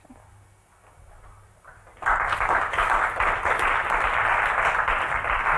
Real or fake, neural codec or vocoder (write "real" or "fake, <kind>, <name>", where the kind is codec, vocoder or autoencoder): real